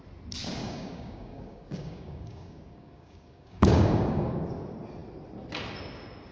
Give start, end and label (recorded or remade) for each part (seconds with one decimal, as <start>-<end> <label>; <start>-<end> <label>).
0.0-0.6 recorded; 0.6-4.4 remade; 4.4-6.3 recorded